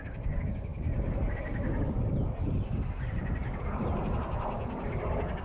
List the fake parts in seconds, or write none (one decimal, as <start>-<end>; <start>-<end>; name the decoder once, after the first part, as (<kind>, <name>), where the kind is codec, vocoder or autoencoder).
none